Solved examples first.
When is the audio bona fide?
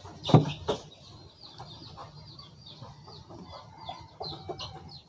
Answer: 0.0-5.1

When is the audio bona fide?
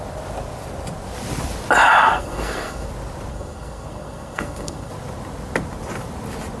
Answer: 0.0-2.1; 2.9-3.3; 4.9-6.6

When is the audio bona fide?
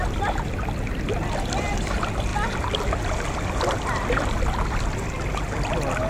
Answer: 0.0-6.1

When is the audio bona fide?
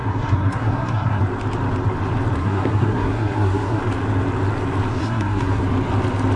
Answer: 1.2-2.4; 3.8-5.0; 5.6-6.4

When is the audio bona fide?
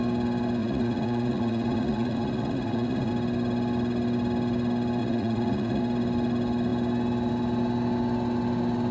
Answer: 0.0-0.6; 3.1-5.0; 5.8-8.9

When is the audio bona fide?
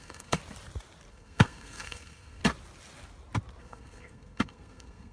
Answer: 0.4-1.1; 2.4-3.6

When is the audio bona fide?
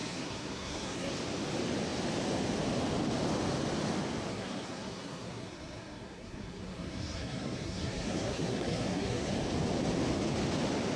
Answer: 1.1-4.3; 9.3-11.0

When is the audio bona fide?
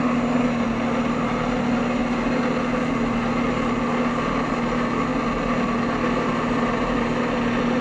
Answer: 0.0-7.8